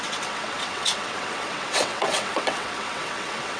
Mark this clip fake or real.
fake